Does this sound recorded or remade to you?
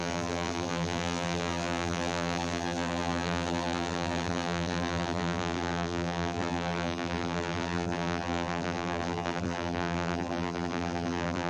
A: remade